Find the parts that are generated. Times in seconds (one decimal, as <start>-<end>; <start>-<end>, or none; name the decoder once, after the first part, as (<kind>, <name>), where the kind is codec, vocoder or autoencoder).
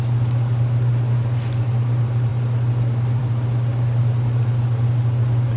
none